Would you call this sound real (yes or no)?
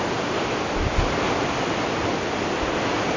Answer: yes